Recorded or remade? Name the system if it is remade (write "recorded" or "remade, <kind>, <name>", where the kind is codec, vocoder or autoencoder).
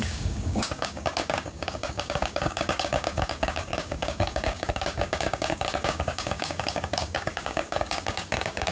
remade, codec, DAC